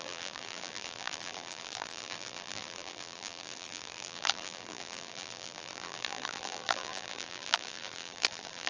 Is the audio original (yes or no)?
no